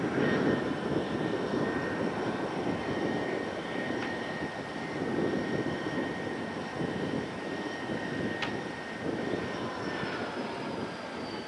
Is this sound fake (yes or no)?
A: no